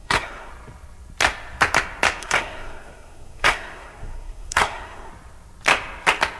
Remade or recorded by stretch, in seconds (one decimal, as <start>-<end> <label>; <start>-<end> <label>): 0.0-0.5 remade; 0.5-2.2 recorded; 2.2-5.1 remade; 5.1-6.4 recorded